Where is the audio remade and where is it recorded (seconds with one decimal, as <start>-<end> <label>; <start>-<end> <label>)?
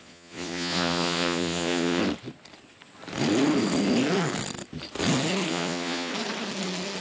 0.0-2.0 remade; 2.0-5.5 recorded; 5.5-6.1 remade; 6.1-7.0 recorded